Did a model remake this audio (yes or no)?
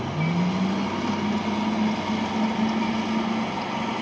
no